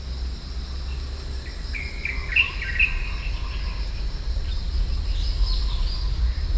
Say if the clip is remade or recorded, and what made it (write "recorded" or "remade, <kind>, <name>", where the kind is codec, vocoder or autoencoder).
recorded